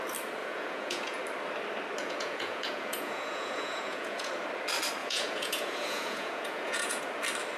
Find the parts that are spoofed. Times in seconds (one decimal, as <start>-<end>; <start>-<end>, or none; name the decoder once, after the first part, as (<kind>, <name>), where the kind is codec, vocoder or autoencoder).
0.4-1.2 (vocoder, Vocos); 2.0-4.3; 5.0-7.0